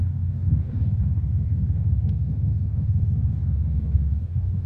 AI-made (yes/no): yes